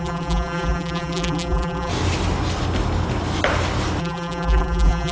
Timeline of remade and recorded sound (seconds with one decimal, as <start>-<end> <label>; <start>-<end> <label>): 0.0-1.9 remade; 1.9-4.0 recorded; 4.0-5.1 remade

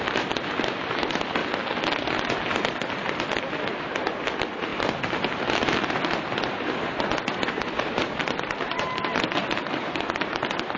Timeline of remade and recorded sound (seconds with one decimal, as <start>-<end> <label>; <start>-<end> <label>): 0.0-1.4 remade; 1.4-3.4 recorded; 3.4-4.7 remade; 4.7-6.4 recorded; 6.4-10.8 remade

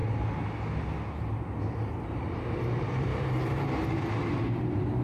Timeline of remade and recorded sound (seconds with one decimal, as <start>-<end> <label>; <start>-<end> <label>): 0.0-1.9 recorded; 1.9-5.0 remade

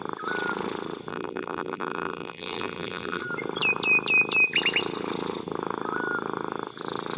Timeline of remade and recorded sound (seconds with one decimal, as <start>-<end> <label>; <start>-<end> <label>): 0.0-1.1 recorded; 1.1-3.2 remade; 3.2-7.2 recorded